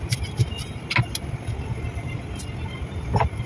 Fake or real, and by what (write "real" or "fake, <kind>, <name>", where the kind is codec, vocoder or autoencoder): real